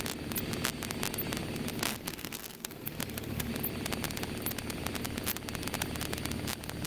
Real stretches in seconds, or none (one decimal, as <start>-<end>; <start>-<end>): 0.0-1.9; 3.5-6.9